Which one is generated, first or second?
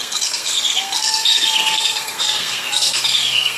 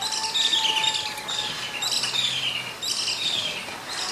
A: first